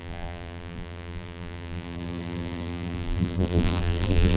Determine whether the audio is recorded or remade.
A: remade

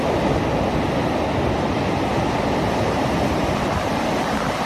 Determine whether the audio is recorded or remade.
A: recorded